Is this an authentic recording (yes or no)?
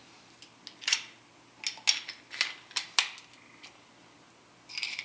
yes